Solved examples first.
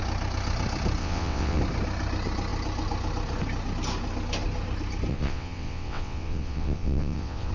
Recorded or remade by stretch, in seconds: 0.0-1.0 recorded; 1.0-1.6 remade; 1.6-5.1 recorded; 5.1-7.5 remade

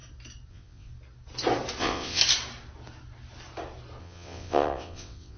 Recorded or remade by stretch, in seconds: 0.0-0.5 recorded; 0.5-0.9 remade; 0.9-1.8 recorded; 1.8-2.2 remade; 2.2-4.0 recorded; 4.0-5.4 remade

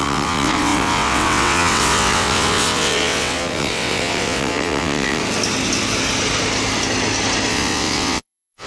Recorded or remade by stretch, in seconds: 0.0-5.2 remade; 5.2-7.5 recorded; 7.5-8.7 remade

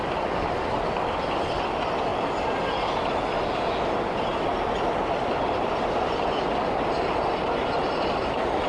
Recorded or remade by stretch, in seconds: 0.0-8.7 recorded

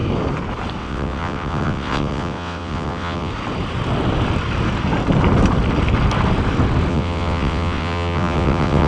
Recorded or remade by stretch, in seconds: 0.0-0.8 recorded; 0.8-3.3 remade; 3.3-6.9 recorded; 6.9-8.9 remade

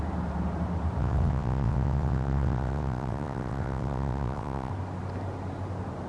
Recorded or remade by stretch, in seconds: 0.0-1.0 recorded; 1.0-4.7 remade; 4.7-6.1 recorded